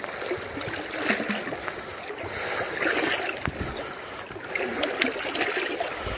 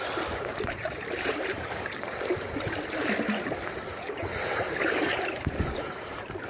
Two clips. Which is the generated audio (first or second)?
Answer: second